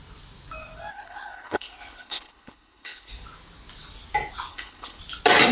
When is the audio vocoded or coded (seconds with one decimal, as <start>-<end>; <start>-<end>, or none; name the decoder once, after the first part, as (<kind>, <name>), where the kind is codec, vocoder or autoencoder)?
0.9-3.1 (codec, HILCodec); 4.5-5.0